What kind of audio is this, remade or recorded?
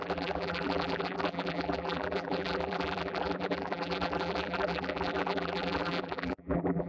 remade